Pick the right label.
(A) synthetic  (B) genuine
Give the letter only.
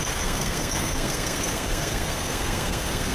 A